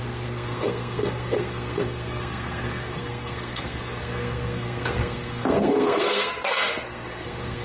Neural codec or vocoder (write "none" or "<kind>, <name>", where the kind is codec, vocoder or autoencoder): codec, SNAC